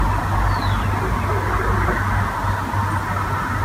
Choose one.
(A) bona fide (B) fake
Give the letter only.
A